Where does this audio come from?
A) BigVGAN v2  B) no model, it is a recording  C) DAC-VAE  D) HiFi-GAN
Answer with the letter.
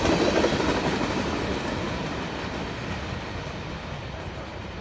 B